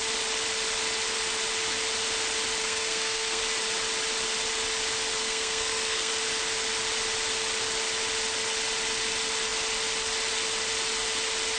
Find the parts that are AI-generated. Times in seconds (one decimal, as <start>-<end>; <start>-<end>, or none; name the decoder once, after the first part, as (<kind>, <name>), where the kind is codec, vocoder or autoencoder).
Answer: 2.6-3.4 (codec, SNAC); 5.2-6.1